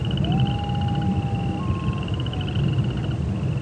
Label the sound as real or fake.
real